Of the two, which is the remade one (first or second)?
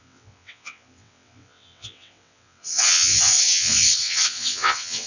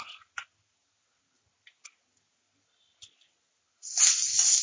first